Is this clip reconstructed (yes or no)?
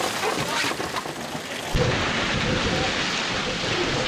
no